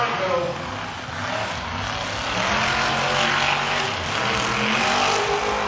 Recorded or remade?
recorded